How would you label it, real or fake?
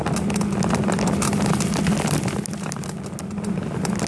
real